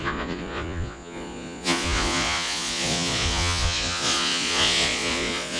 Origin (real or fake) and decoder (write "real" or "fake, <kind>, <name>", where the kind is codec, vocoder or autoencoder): fake, vocoder, Vocos